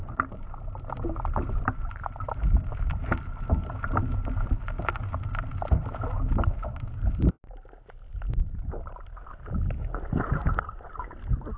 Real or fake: real